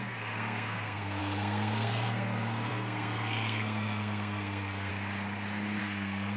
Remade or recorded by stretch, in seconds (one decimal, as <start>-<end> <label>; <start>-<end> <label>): 0.0-4.9 remade; 4.9-5.8 recorded; 5.8-6.4 remade